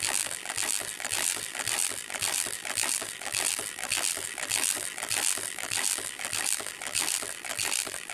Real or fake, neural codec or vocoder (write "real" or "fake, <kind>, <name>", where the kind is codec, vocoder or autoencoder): fake, vocoder, BigVGAN v2